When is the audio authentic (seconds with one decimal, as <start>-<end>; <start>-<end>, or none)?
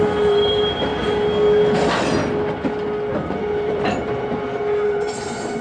0.9-3.1